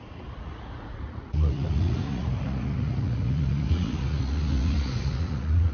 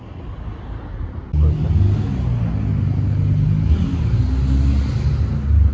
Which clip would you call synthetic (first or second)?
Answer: first